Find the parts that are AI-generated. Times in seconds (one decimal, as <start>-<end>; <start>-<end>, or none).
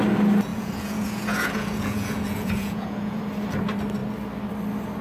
0.5-3.2